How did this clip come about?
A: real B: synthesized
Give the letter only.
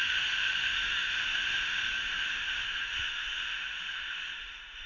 B